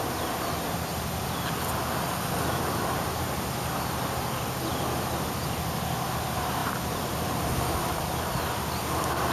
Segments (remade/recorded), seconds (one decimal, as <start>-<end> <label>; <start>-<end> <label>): 0.0-9.3 recorded